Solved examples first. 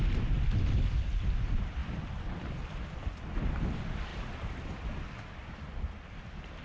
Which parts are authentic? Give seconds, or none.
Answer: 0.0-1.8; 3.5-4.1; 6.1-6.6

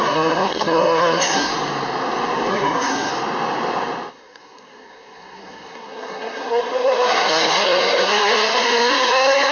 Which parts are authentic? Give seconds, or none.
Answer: 1.5-2.5; 3.1-4.1

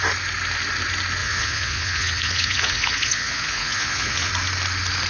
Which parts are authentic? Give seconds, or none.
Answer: 0.0-1.2; 4.3-5.1

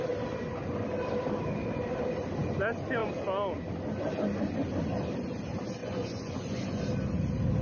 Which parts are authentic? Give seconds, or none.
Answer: 0.0-5.8; 6.8-7.6